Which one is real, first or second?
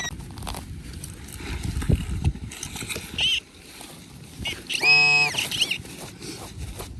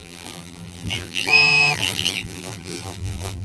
first